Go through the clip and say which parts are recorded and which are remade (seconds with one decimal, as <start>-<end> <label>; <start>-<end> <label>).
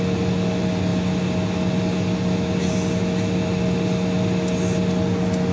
0.0-5.5 recorded